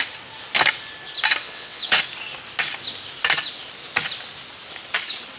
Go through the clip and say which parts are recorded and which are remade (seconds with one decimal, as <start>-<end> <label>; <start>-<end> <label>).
0.0-1.4 recorded; 1.4-2.0 remade; 2.0-5.4 recorded